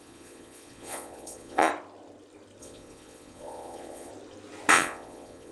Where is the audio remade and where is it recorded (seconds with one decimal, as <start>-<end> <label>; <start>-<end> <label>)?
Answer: 0.0-1.7 remade; 1.7-2.6 recorded; 2.6-4.1 remade; 4.1-4.7 recorded; 4.7-5.5 remade